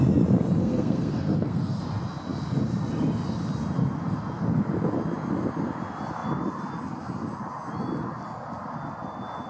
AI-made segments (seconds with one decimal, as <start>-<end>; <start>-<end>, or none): 0.6-1.8